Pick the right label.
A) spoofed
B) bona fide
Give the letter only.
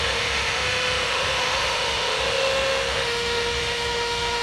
A